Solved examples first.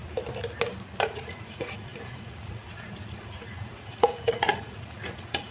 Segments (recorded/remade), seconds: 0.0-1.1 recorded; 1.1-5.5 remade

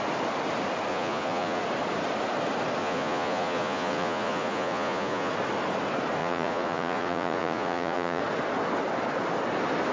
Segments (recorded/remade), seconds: 0.0-0.9 recorded; 0.9-1.6 remade; 1.6-2.8 recorded; 2.8-5.3 remade; 5.3-6.2 recorded; 6.2-8.2 remade; 8.2-9.9 recorded

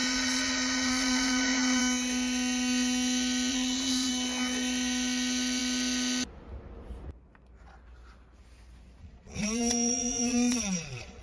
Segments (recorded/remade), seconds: 0.0-1.8 remade; 1.8-3.5 recorded; 3.5-4.1 remade; 4.1-9.0 recorded; 9.0-11.2 remade

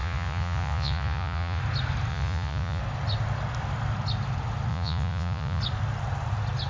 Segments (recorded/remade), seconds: 0.0-1.6 remade; 1.6-2.1 recorded; 2.1-2.8 remade; 2.8-4.7 recorded; 4.7-5.6 remade; 5.6-6.7 recorded